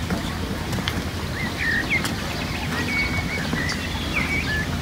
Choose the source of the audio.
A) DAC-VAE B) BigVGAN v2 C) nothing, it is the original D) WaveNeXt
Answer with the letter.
C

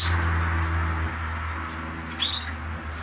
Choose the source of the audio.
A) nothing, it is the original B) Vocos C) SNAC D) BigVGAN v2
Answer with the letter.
A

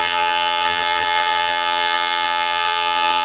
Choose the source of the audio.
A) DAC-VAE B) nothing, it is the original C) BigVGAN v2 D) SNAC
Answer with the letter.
C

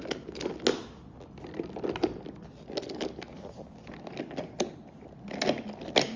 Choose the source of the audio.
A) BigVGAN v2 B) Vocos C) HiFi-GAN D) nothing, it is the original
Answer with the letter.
D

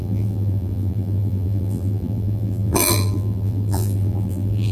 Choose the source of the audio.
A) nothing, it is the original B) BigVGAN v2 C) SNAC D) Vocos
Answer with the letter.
B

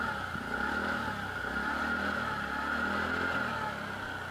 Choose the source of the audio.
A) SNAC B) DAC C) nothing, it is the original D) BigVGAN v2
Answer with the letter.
C